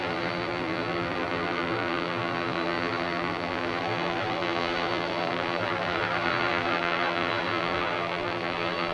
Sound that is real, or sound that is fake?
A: fake